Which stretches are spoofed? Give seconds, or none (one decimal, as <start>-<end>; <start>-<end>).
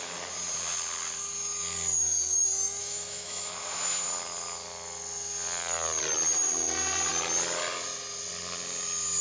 2.8-3.5